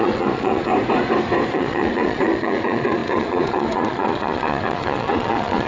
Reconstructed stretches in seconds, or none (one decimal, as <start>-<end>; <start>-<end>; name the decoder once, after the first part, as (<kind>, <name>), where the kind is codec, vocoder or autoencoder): 0.0-0.7 (vocoder, Vocos); 1.5-5.7